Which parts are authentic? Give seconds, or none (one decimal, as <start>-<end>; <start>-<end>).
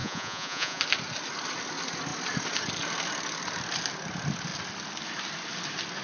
0.8-6.0